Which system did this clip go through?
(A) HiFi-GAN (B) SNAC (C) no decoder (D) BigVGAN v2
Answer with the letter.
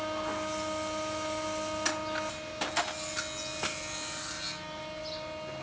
C